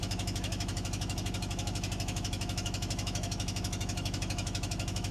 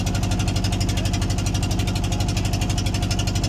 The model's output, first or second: first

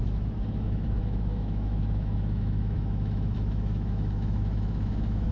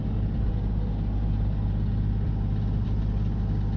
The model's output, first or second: first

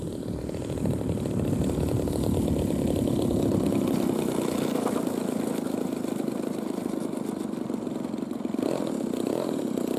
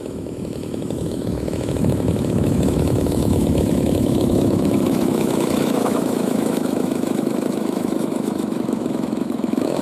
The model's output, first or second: second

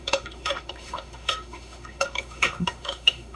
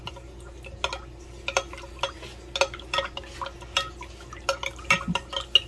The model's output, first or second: first